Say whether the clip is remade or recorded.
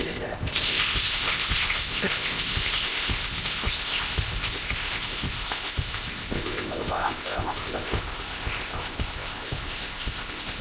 remade